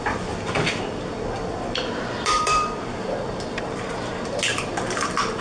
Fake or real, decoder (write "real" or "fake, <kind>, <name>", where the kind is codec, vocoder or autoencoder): fake, vocoder, BigVGAN v2